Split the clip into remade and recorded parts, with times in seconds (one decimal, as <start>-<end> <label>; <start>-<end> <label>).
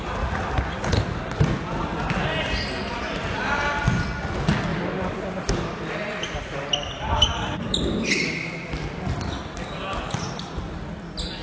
0.0-4.7 recorded; 4.7-5.5 remade; 5.5-11.4 recorded